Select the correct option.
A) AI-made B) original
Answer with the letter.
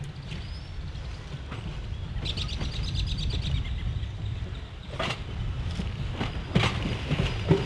B